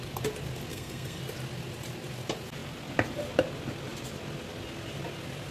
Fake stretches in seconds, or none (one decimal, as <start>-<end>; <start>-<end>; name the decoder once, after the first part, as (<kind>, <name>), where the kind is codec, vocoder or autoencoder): 0.7-1.2 (codec, SNAC)